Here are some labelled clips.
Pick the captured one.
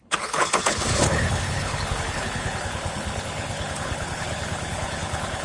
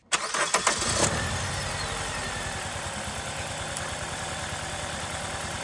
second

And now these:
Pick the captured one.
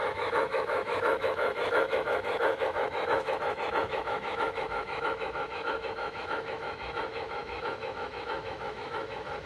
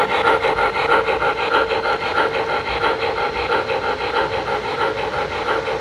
second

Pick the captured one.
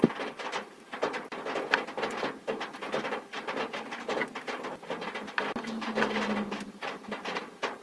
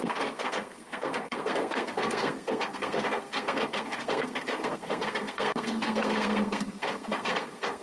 first